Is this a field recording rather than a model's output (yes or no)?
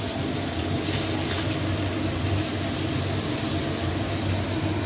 yes